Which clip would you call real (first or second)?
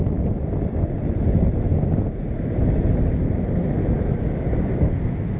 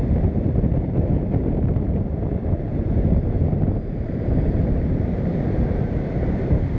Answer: first